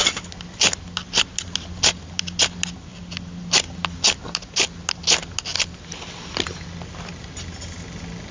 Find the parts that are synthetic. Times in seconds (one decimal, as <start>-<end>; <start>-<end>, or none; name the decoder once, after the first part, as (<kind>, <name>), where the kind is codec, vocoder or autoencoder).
none